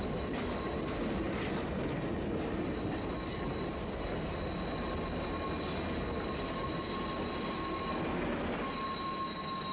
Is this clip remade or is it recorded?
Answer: recorded